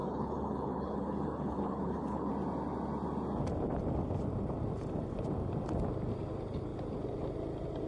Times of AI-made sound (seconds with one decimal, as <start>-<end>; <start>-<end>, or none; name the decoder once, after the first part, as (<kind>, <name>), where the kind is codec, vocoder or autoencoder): 0.0-2.3 (codec, HILCodec)